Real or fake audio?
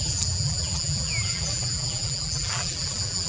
fake